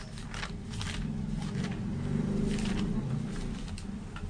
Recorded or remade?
remade